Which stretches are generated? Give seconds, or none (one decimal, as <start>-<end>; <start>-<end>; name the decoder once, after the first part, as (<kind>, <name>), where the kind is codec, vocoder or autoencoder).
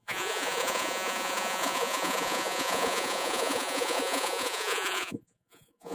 0.0-5.9 (vocoder, Vocos)